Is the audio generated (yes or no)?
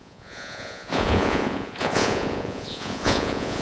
yes